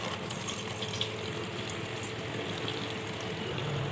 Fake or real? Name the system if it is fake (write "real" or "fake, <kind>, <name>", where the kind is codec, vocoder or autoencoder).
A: real